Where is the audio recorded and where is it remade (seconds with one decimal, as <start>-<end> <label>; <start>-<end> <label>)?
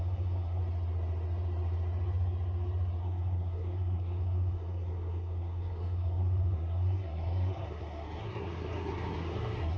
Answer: 0.0-0.6 remade; 0.6-3.0 recorded; 3.0-9.8 remade